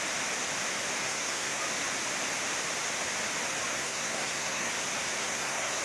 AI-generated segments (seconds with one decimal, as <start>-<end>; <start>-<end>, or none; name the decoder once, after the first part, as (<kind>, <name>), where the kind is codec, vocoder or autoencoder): 1.0-1.6 (codec, SNAC); 3.7-4.7; 5.2-5.8

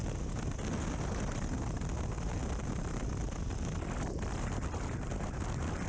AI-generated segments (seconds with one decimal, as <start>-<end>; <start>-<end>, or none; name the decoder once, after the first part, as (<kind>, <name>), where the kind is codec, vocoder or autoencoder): none